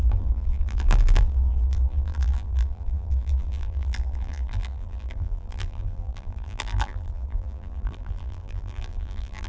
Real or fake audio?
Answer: fake